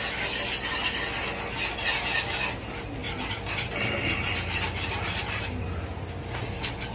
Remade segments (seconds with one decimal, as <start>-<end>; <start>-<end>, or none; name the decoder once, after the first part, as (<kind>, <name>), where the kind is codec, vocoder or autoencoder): none